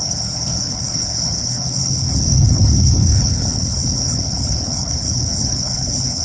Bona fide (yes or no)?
no